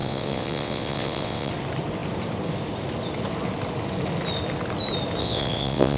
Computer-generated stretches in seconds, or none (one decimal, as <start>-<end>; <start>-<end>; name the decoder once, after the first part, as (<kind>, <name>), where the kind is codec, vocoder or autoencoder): 0.0-1.5 (vocoder, WaveNeXt); 5.2-6.0